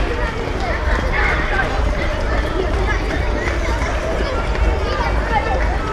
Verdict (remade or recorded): recorded